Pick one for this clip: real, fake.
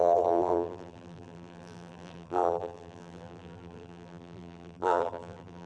fake